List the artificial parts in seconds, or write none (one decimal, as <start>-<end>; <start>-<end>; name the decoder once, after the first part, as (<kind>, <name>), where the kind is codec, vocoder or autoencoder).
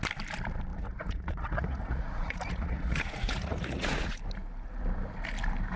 0.7-4.2 (vocoder, Vocos)